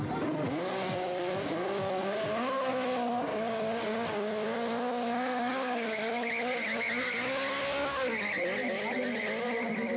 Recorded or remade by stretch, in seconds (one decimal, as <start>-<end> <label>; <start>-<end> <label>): 0.0-0.5 recorded; 0.5-2.7 remade; 2.7-3.3 recorded; 3.3-6.3 remade; 6.3-10.0 recorded